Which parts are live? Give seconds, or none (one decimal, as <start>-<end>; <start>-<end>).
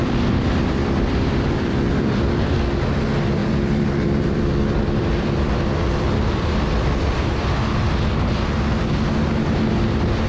2.5-3.4; 7.3-10.3